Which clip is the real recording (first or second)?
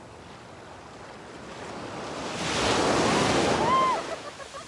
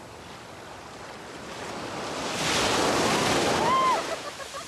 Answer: first